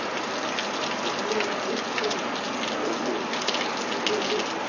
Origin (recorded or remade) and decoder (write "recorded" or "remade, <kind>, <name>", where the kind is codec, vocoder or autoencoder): recorded